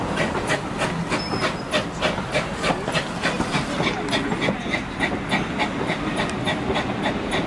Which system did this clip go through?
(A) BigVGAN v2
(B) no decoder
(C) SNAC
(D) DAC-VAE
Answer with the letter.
B